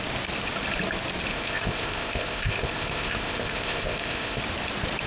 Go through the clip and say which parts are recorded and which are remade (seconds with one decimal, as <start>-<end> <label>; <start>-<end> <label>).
0.0-1.3 recorded; 1.3-4.4 remade; 4.4-5.1 recorded